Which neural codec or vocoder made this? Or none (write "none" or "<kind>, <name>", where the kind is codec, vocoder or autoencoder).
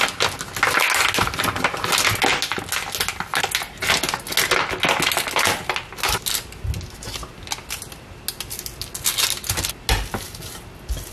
none